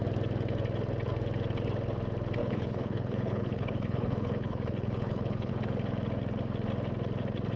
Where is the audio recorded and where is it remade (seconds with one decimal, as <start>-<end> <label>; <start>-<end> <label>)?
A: 0.0-2.4 recorded; 2.4-5.5 remade; 5.5-7.6 recorded